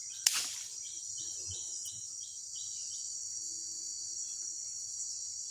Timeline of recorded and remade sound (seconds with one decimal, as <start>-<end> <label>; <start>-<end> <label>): 0.0-5.5 recorded